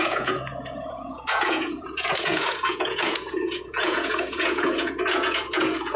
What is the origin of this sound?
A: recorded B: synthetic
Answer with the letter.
B